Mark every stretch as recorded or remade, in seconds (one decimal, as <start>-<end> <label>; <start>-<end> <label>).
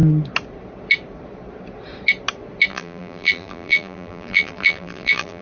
0.0-2.7 recorded; 2.7-5.4 remade